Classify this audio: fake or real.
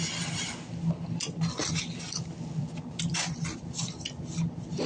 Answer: real